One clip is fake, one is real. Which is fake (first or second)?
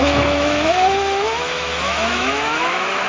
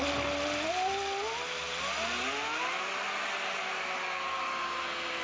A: first